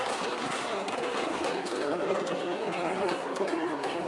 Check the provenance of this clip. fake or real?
fake